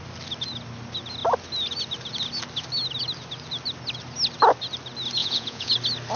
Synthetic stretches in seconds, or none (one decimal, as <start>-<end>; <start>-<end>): 5.2-5.7